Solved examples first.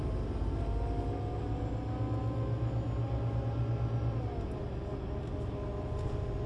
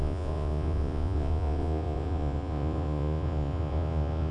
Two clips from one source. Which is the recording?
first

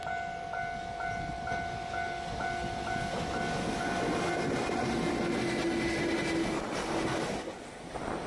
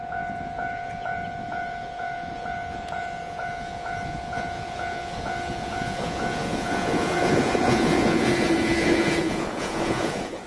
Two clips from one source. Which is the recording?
first